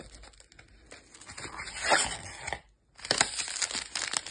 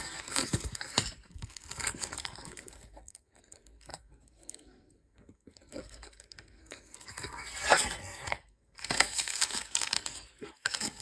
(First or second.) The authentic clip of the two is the first